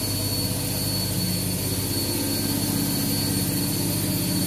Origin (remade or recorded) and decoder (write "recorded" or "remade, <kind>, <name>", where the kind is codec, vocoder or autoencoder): recorded